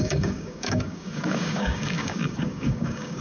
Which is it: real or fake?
fake